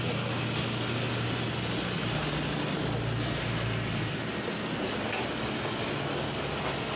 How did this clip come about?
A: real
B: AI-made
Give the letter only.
A